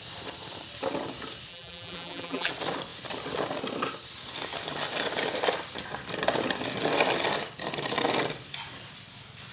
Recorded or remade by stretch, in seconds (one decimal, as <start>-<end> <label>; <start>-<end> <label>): 0.0-1.5 recorded; 1.5-2.5 remade; 2.5-9.5 recorded